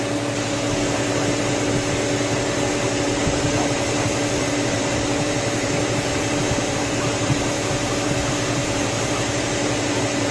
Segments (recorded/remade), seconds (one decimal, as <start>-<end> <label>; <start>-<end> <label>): 0.0-2.7 recorded; 2.7-7.9 remade; 7.9-8.6 recorded; 8.6-10.3 remade

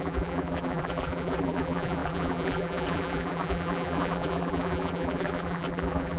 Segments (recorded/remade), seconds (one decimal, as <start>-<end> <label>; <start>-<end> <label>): 0.0-6.2 remade

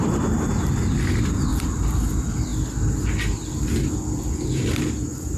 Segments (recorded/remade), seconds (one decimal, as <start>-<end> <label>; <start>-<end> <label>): 0.0-0.7 remade; 0.7-1.5 recorded; 1.5-2.1 remade; 2.1-5.4 recorded

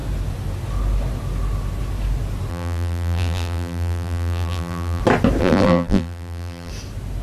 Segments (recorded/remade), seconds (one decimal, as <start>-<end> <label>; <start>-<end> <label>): 0.0-2.5 recorded; 2.5-5.0 remade; 5.0-5.4 recorded; 5.4-6.7 remade; 6.7-7.2 recorded

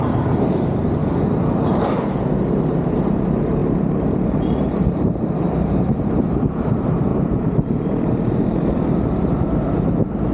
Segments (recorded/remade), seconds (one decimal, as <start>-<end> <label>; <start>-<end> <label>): 0.0-1.0 remade; 1.0-2.1 recorded; 2.1-10.3 remade

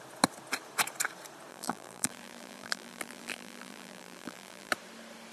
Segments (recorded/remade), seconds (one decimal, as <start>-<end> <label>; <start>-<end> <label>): 0.0-1.5 recorded; 1.5-4.7 remade; 4.7-5.3 recorded